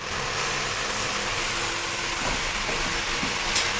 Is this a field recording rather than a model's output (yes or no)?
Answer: yes